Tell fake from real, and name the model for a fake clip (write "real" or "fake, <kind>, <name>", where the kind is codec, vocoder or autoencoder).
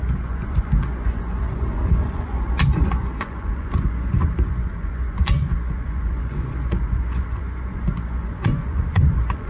fake, vocoder, Vocos